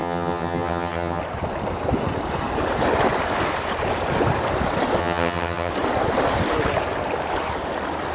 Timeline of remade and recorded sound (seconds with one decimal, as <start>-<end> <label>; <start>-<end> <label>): 0.0-1.2 remade; 1.2-5.0 recorded; 5.0-5.7 remade; 5.7-8.1 recorded